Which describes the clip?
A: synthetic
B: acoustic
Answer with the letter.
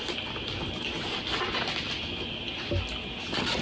B